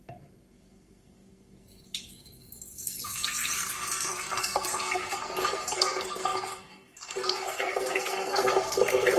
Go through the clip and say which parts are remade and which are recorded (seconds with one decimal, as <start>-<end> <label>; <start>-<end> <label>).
0.0-9.2 remade